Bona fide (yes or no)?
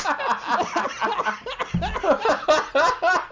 yes